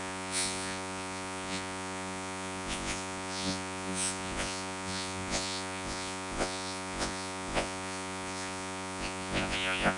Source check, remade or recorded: remade